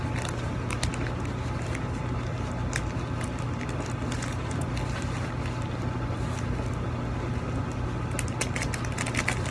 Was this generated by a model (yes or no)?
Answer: no